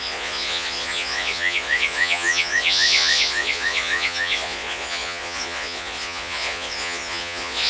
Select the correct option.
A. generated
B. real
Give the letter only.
A